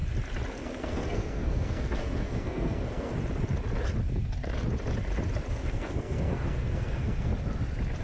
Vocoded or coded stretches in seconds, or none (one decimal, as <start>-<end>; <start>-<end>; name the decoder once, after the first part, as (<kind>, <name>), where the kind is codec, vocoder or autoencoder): 0.5-3.1 (codec, SNAC); 5.5-7.3